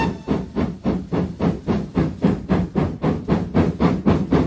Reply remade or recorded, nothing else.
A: recorded